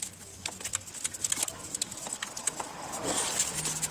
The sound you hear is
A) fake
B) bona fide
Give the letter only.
B